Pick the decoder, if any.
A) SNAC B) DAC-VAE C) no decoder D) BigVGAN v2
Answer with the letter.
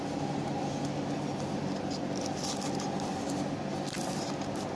C